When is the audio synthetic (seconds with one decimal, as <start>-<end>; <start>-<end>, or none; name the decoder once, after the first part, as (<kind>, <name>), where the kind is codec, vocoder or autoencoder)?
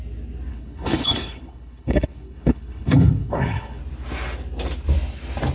0.5-3.8 (codec, HILCodec)